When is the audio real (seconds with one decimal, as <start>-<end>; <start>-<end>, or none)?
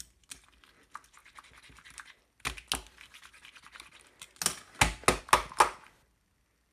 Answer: 0.0-6.7